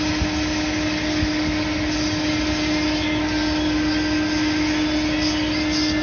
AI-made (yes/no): no